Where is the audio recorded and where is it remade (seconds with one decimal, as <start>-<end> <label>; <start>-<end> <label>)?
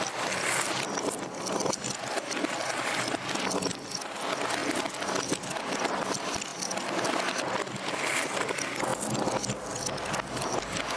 0.0-4.6 remade; 4.6-5.3 recorded; 5.3-8.9 remade; 8.9-9.5 recorded; 9.5-11.0 remade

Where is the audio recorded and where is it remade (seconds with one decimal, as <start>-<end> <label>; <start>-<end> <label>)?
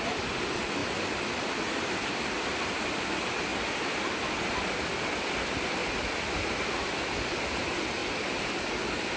0.0-5.8 recorded; 5.8-6.9 remade; 6.9-9.2 recorded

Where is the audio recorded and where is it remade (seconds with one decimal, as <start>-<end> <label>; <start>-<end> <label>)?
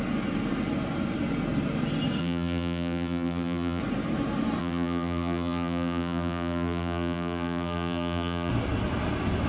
0.0-2.2 recorded; 2.2-3.8 remade; 3.8-4.6 recorded; 4.6-8.5 remade; 8.5-9.5 recorded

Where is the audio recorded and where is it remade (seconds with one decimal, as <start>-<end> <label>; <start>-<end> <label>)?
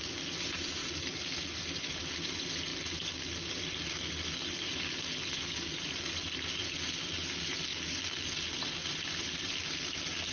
0.0-0.8 recorded; 0.8-2.0 remade; 2.0-7.7 recorded; 7.7-9.5 remade; 9.5-10.3 recorded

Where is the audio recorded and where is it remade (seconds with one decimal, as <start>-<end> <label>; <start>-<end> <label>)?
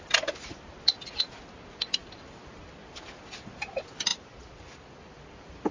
0.0-2.0 recorded; 2.0-2.7 remade; 2.7-4.1 recorded; 4.1-5.7 remade